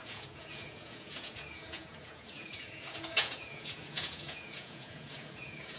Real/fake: fake